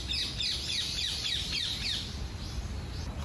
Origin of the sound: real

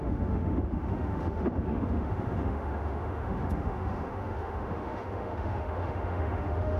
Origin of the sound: fake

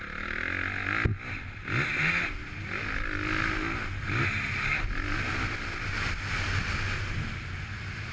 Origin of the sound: real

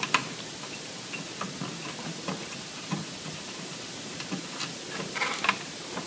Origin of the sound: real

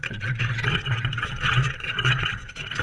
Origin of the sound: fake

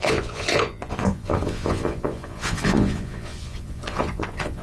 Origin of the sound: fake